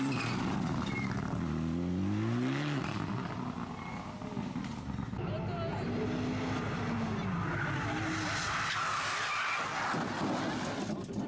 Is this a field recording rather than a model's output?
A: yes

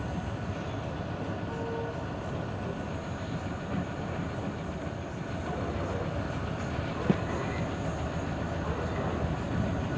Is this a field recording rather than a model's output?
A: yes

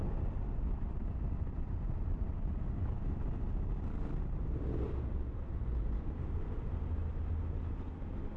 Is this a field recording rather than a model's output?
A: yes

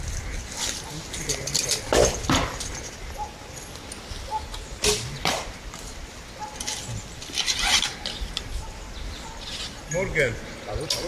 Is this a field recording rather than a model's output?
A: yes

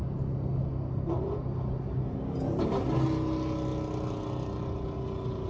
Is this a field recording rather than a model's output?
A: yes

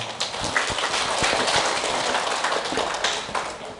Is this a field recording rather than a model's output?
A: yes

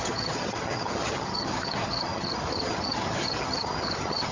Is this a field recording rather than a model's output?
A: no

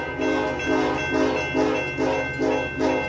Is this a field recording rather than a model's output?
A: yes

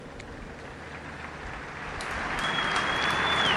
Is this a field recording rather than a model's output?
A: yes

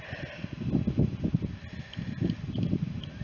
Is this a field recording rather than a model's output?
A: yes